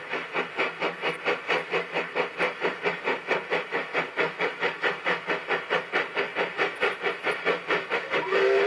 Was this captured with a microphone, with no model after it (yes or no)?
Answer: yes